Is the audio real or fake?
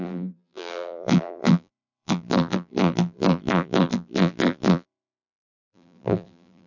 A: fake